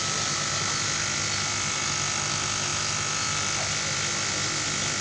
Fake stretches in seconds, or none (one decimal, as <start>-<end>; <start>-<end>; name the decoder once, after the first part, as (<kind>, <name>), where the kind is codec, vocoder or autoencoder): none